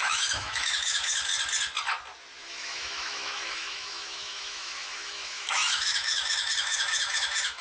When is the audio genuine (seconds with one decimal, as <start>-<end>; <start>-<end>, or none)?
1.3-2.4